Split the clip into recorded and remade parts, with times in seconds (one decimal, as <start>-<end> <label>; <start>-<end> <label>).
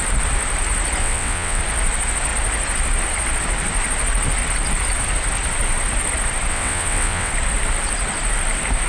0.0-1.0 recorded; 1.0-1.6 remade; 1.6-6.5 recorded; 6.5-7.3 remade; 7.3-8.9 recorded